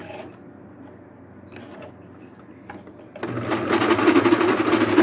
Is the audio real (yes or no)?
yes